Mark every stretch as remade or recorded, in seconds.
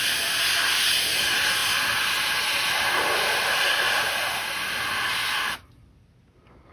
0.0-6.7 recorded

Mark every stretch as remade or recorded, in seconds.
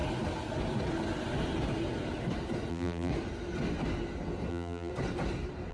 0.0-2.7 recorded; 2.7-3.1 remade; 3.1-4.5 recorded; 4.5-4.9 remade; 4.9-5.7 recorded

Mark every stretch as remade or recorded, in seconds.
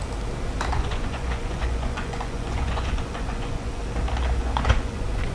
0.0-0.7 recorded; 0.7-3.8 remade; 3.8-4.4 recorded; 4.4-5.3 remade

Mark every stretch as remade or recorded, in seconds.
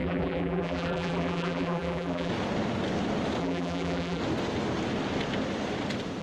0.0-2.3 remade; 2.3-3.4 recorded; 3.4-4.2 remade; 4.2-6.2 recorded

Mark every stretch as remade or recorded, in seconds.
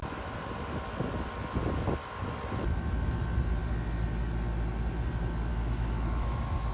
0.0-5.5 recorded; 5.5-6.7 remade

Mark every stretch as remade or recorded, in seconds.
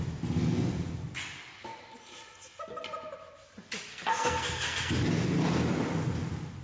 0.0-3.9 recorded; 3.9-4.9 remade; 4.9-6.6 recorded